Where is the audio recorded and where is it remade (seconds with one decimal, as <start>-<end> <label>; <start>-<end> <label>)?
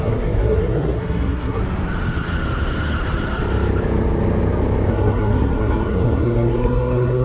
0.0-1.6 remade; 1.6-4.9 recorded; 4.9-7.2 remade